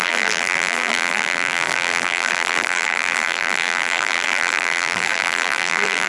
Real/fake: fake